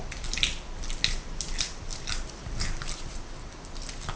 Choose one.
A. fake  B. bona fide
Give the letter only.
B